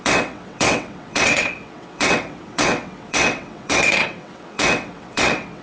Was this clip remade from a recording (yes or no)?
yes